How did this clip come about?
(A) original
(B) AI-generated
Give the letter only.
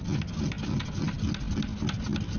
A